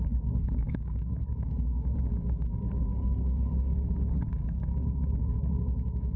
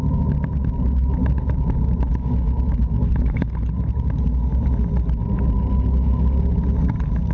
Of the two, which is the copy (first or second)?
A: first